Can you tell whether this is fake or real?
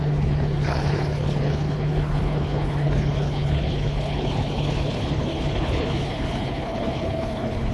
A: fake